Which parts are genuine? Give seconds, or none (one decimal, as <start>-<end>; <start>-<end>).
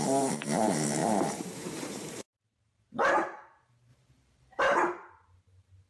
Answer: 3.9-4.6